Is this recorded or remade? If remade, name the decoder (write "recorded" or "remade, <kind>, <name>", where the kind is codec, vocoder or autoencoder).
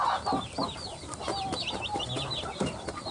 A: recorded